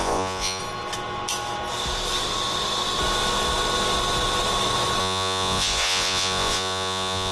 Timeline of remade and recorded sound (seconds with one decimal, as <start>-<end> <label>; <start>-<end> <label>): 0.0-0.6 remade; 0.6-5.0 recorded; 5.0-7.3 remade